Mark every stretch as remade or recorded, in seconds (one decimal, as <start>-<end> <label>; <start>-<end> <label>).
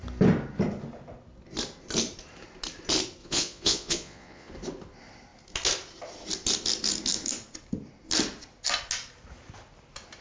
0.0-3.2 recorded; 3.2-4.5 remade; 4.5-10.2 recorded